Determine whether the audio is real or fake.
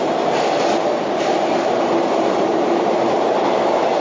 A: fake